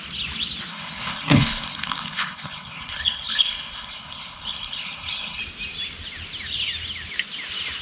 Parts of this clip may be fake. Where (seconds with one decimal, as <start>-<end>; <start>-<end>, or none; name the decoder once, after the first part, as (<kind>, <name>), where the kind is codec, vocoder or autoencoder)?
0.7-5.4 (codec, HILCodec)